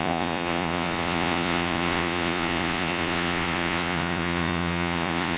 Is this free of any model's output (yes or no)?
no